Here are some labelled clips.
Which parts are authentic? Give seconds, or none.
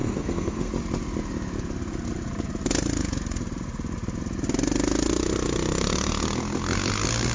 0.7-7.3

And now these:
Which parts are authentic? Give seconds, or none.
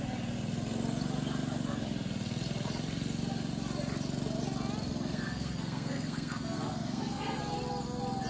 0.0-5.1; 7.4-8.3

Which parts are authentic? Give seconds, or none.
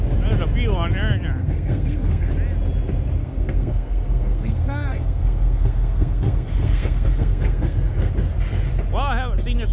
0.0-1.4; 2.3-3.2; 8.1-9.7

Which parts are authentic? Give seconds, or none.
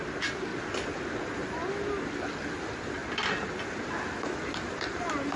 0.0-5.4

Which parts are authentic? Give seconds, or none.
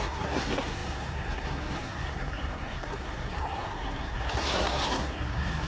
none